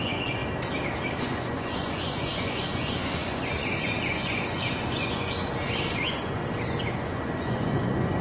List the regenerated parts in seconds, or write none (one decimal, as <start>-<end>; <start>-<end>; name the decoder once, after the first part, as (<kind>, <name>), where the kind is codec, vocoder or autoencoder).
0.0-0.4 (vocoder, Vocos); 1.2-5.4; 5.9-6.4; 6.9-8.2